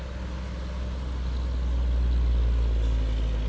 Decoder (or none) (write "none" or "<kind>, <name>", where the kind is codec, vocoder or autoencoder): none